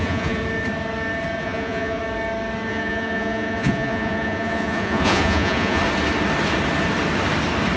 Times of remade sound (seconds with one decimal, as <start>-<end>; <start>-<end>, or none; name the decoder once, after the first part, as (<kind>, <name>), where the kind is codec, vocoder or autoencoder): 0.0-0.4 (vocoder, Vocos); 1.4-2.0; 2.7-5.8